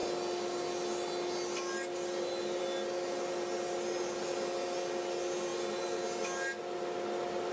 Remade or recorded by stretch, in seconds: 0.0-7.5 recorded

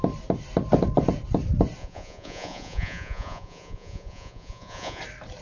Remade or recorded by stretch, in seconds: 0.0-1.8 recorded; 1.8-5.0 remade; 5.0-5.4 recorded

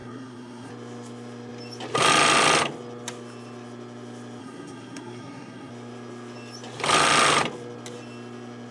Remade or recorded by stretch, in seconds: 0.0-0.7 remade; 0.7-4.4 recorded; 4.4-5.7 remade; 5.7-8.7 recorded

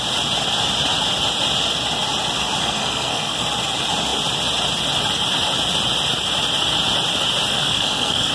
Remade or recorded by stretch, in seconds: 0.0-2.6 recorded; 2.6-3.4 remade; 3.4-7.5 recorded; 7.5-8.3 remade

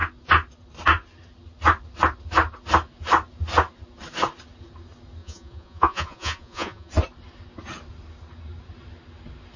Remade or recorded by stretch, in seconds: 0.0-5.2 recorded; 5.2-6.9 remade; 6.9-9.6 recorded

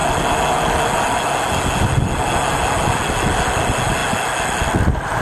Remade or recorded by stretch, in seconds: 0.0-5.2 recorded

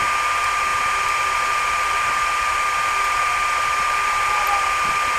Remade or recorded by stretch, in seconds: 0.0-5.2 recorded